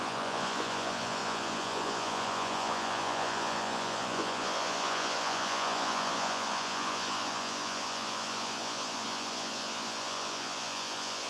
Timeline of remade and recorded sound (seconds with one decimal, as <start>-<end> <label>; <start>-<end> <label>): 0.0-11.3 remade